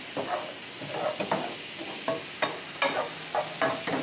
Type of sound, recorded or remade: recorded